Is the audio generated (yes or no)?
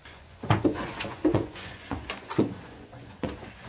yes